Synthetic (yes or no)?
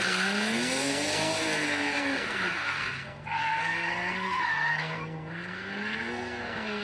yes